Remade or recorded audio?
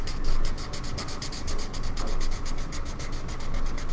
recorded